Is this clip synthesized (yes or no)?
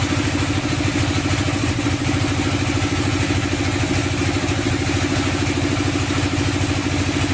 no